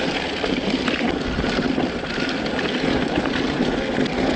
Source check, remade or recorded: recorded